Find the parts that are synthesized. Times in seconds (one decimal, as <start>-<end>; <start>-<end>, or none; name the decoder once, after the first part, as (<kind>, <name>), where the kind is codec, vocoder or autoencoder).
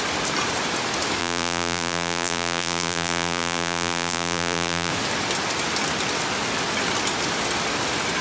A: 1.2-4.9 (vocoder, BigVGAN v2)